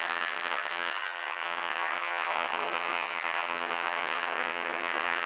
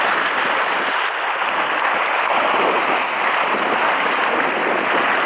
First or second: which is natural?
second